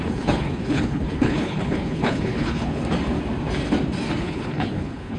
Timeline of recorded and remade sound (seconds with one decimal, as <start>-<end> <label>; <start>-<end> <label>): 0.0-2.8 remade; 2.8-4.2 recorded; 4.2-5.2 remade